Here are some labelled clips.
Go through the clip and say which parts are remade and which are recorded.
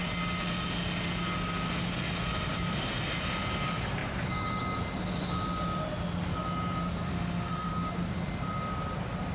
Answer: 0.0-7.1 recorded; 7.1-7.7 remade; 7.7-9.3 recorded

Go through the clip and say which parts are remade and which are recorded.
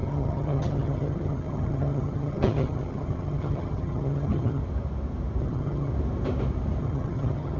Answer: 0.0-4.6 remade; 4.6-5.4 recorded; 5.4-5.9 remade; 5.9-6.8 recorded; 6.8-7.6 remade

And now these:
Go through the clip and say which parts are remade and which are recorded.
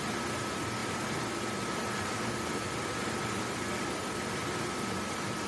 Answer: 0.0-5.5 recorded